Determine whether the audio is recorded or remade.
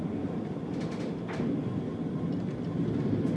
recorded